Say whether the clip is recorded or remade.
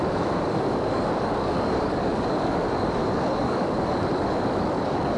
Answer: remade